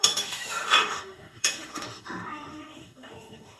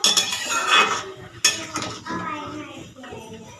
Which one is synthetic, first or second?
first